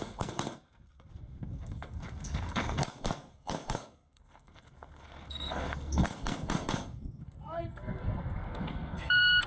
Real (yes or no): no